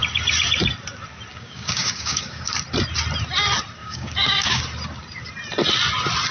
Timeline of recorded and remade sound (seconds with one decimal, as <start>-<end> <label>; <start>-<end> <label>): 0.0-1.3 recorded; 1.3-2.5 remade; 2.5-3.8 recorded; 3.8-4.6 remade; 4.6-6.3 recorded